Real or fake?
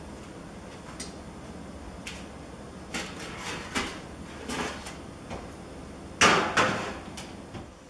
real